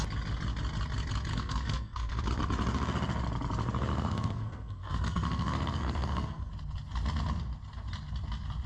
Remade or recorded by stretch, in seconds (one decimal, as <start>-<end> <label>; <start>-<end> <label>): 0.0-1.3 recorded; 1.3-2.2 remade; 2.2-3.9 recorded; 3.9-6.5 remade; 6.5-8.7 recorded